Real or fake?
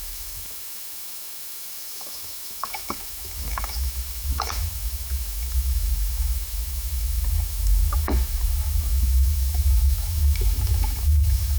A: fake